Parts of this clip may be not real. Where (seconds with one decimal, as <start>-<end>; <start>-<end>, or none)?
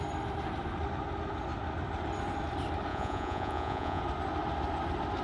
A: 2.9-4.0